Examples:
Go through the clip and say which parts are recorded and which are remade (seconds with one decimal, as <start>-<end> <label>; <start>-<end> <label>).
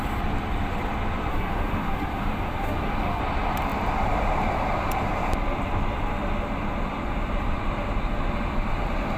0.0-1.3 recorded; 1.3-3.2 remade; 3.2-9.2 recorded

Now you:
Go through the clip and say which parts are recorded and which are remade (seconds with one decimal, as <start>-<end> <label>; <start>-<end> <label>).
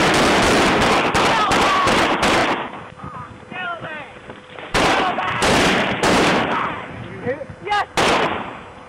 0.0-1.8 recorded; 1.8-2.4 remade; 2.4-3.5 recorded; 3.5-8.9 remade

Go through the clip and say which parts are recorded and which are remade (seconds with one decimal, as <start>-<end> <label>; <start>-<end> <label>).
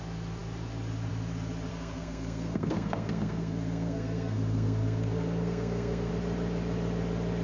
0.0-1.7 recorded; 1.7-6.1 remade; 6.1-7.4 recorded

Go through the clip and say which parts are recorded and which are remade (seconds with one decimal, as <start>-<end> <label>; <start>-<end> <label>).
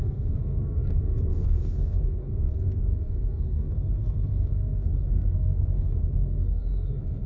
0.0-7.3 remade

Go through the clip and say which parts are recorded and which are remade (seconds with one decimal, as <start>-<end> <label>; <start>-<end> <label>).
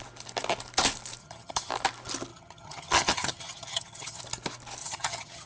0.0-1.2 recorded; 1.2-1.7 remade; 1.7-2.3 recorded; 2.3-4.2 remade; 4.2-4.8 recorded; 4.8-5.5 remade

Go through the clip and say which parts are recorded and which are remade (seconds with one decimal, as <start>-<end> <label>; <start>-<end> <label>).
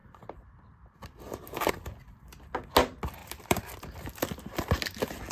0.0-1.7 remade; 1.7-3.2 recorded; 3.2-4.8 remade; 4.8-5.3 recorded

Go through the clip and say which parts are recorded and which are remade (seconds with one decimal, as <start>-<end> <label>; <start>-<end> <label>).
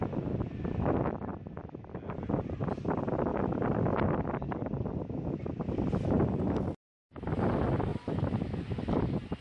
0.0-9.4 recorded